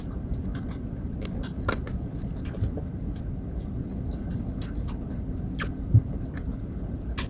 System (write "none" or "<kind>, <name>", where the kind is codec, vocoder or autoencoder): none